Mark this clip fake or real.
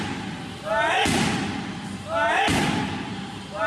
real